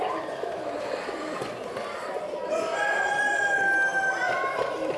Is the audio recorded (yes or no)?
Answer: yes